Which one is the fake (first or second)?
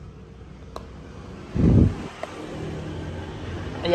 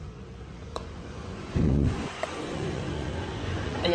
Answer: second